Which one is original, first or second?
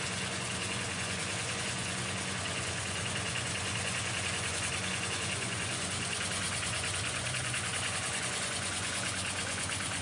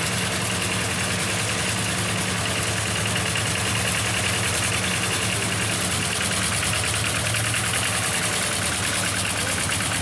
second